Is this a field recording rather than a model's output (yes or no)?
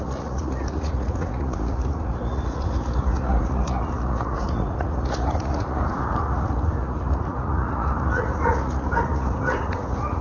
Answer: no